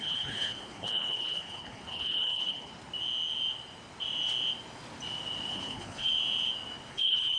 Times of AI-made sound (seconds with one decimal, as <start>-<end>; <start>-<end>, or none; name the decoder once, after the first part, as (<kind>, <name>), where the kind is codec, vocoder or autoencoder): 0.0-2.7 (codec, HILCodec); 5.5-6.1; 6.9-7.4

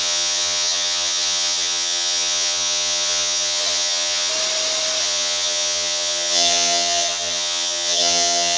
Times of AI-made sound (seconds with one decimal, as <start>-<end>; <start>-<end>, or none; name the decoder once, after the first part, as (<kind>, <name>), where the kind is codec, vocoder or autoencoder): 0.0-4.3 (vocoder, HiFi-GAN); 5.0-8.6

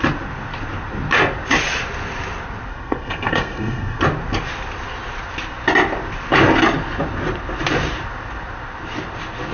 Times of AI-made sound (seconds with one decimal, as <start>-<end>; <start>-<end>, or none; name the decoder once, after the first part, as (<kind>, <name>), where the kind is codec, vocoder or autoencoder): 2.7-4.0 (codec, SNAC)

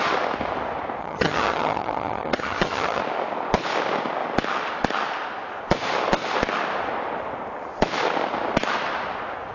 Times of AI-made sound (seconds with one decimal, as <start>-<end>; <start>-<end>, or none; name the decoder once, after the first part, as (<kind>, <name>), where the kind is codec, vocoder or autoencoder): 1.0-3.0 (vocoder, HiFi-GAN)

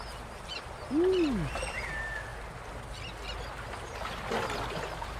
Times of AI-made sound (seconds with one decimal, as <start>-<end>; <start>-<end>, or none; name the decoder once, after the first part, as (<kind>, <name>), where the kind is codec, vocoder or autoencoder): 0.0-2.3 (vocoder, BigVGAN v2); 4.8-5.2

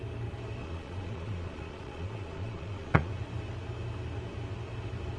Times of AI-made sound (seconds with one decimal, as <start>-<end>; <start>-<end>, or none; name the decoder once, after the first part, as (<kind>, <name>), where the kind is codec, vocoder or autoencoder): 0.6-3.1 (vocoder, Vocos)

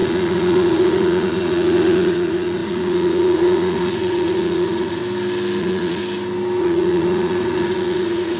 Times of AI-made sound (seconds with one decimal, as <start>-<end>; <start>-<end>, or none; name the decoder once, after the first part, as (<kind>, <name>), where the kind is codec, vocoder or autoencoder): 0.0-5.0 (vocoder, Vocos); 5.6-6.0; 6.6-8.4

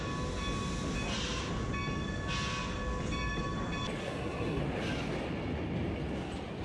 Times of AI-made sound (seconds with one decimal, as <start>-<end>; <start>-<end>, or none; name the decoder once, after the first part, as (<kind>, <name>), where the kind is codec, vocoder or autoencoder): 4.0-4.6 (codec, SNAC)